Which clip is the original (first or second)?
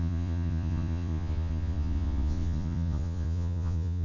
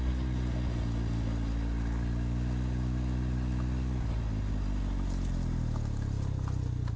second